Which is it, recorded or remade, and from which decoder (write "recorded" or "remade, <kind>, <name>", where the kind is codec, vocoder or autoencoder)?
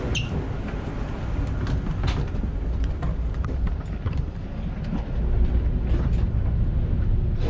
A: recorded